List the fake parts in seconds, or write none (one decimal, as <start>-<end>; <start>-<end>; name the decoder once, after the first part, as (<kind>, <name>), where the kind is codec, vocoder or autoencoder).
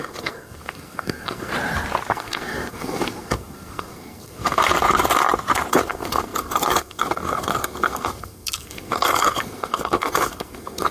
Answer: 0.0-1.5 (codec, SNAC); 2.1-4.6; 5.7-10.9